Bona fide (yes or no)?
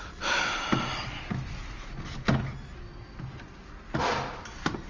yes